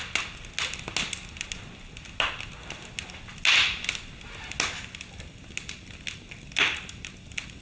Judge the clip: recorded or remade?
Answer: recorded